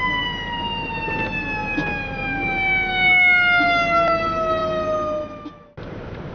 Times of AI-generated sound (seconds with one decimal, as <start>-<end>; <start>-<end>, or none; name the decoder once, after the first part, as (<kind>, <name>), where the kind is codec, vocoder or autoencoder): none